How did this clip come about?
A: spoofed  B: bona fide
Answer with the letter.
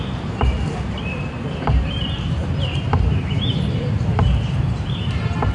A